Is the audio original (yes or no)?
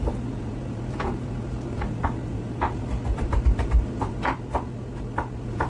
no